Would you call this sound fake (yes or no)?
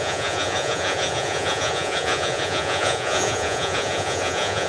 yes